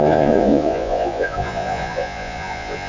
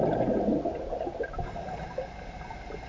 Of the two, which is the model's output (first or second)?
first